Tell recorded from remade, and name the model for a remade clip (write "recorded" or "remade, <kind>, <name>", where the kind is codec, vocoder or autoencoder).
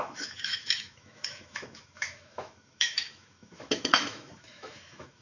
remade, autoencoder, DAC-VAE